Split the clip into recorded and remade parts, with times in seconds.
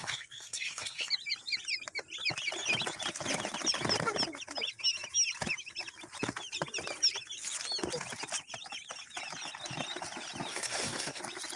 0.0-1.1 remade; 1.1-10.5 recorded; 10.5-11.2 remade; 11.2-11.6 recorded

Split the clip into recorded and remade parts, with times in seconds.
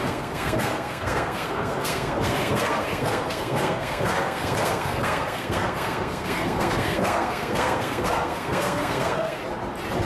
0.0-9.4 remade; 9.4-10.1 recorded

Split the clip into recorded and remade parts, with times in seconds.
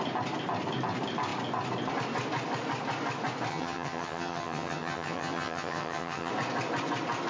0.0-3.5 recorded; 3.5-6.3 remade; 6.3-7.3 recorded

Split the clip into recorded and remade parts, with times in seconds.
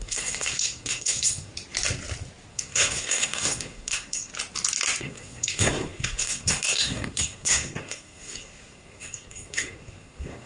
0.0-1.5 remade; 1.5-2.5 recorded; 2.5-4.3 remade; 4.3-5.0 recorded; 5.0-10.5 remade